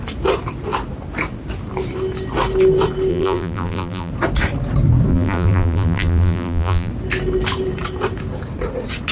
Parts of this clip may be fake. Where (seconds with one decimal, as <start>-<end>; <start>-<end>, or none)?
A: 3.1-4.1; 5.1-6.9

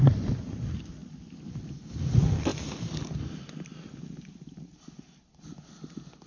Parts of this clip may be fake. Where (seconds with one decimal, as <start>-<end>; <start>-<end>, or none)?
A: none

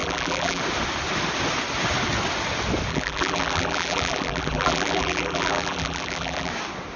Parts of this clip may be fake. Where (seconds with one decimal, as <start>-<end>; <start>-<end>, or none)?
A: 0.0-0.6; 2.9-6.5

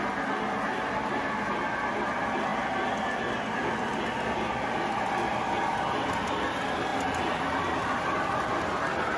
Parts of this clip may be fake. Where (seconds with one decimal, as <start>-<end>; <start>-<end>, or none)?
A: 6.9-8.5

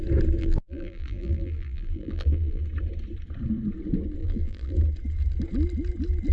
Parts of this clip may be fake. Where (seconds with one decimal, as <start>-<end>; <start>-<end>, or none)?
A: 0.4-2.6; 4.2-4.7